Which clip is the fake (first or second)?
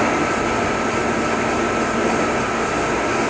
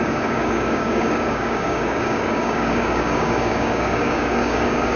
second